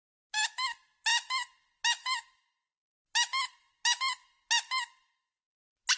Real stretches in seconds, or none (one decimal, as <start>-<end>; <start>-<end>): 0.0-6.0